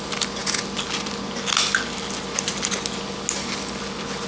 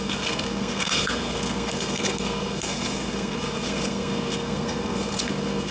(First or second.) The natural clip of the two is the first